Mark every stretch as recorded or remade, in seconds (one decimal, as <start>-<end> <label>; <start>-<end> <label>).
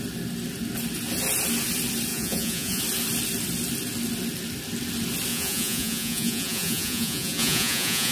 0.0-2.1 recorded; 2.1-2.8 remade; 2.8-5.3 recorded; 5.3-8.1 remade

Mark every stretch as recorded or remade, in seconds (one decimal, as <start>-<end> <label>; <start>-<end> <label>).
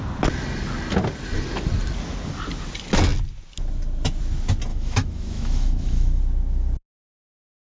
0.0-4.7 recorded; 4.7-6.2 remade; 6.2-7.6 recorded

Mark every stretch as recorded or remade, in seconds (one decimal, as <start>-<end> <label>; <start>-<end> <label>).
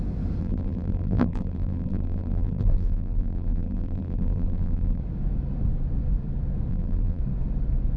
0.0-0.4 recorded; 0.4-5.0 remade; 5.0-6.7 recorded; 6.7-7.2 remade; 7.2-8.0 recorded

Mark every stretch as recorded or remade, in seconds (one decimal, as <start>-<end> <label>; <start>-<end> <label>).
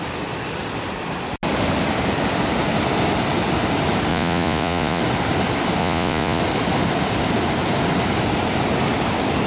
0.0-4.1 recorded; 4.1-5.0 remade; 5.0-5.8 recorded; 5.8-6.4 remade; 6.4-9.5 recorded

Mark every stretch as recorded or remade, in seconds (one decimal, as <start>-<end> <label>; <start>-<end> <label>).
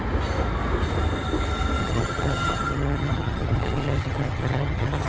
0.0-1.8 recorded; 1.8-5.1 remade